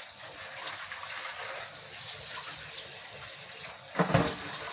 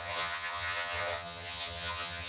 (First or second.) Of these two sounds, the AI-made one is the second